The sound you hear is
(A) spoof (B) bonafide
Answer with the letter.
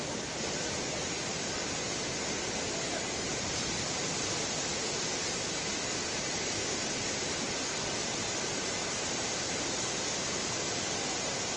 B